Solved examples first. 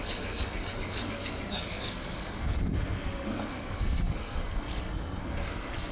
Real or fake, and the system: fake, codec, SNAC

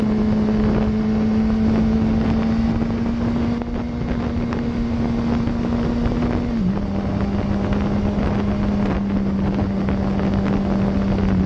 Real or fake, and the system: real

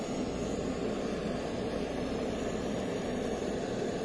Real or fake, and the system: real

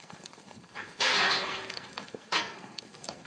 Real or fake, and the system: fake, codec, SNAC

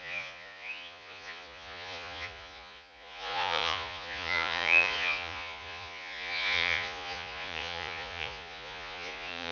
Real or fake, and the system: fake, vocoder, Vocos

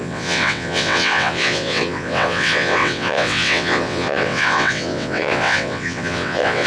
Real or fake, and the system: fake, vocoder, WaveNeXt